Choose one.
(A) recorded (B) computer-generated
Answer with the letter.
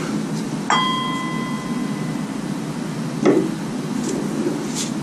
A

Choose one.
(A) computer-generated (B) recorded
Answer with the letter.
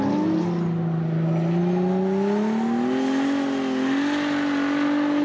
B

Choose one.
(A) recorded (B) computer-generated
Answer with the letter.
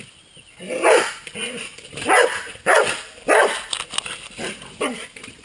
A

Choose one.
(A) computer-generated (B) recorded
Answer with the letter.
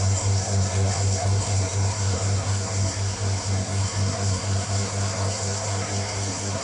A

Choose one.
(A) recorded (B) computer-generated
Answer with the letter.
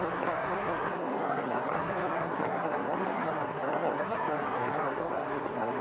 B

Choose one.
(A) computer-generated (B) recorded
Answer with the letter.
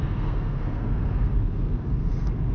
A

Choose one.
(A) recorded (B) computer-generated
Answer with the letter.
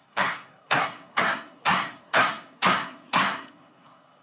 B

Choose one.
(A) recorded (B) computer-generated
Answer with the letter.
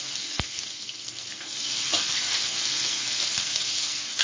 B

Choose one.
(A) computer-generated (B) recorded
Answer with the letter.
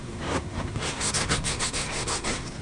A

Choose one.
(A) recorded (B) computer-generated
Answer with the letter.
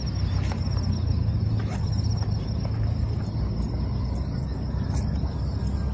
A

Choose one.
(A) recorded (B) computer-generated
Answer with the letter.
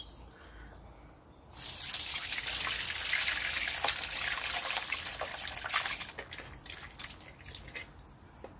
A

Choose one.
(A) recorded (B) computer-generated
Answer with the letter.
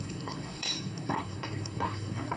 B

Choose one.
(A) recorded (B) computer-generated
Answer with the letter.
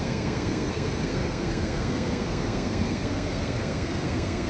B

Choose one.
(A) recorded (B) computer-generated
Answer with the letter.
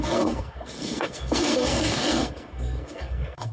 B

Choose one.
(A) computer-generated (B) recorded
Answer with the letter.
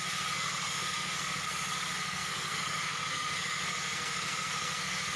A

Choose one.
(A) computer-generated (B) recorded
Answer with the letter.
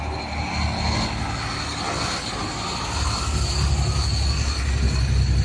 B